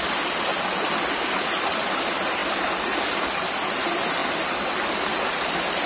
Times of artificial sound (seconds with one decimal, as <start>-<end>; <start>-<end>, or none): none